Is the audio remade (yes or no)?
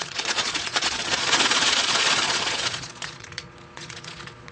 yes